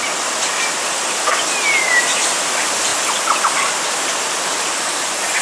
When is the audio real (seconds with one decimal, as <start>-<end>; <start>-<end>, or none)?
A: 0.0-5.4

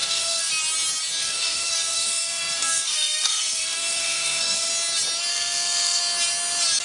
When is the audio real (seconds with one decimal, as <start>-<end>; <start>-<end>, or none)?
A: 0.5-1.2; 4.7-5.3; 6.0-6.8

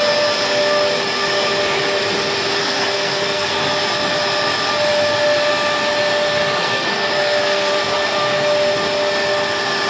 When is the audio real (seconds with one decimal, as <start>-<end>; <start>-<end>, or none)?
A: 0.0-2.6; 3.6-6.6; 7.7-9.9

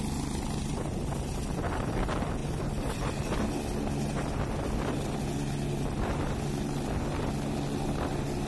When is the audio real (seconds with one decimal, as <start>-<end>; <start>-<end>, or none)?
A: 0.0-8.5

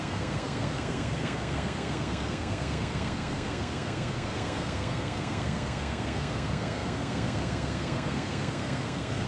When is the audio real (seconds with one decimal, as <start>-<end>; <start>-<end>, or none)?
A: none